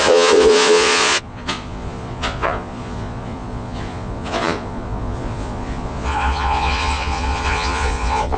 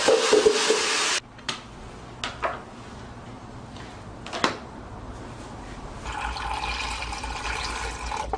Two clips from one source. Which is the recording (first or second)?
second